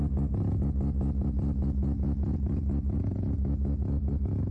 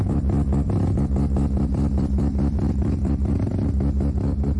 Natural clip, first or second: first